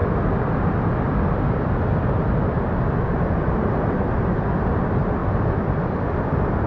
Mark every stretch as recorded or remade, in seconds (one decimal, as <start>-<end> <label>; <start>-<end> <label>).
0.0-6.7 recorded